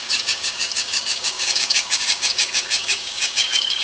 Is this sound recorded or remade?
remade